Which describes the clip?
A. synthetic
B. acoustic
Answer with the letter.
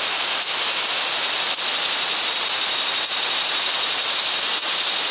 B